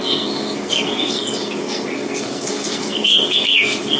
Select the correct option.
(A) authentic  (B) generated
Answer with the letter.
B